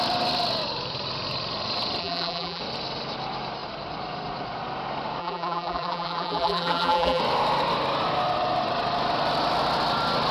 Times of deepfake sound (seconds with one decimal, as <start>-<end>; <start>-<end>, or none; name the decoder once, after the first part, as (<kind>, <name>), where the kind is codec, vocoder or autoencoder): 2.0-2.6 (vocoder, BigVGAN v2); 5.2-7.2